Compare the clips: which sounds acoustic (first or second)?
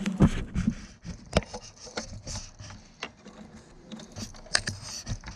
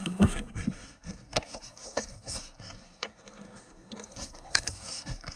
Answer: first